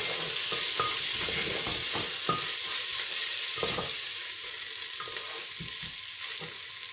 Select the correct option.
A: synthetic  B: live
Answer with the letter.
B